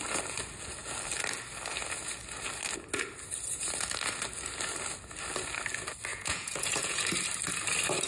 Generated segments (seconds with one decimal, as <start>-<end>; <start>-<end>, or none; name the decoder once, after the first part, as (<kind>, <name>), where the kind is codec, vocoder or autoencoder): 6.1-7.1 (vocoder, Vocos)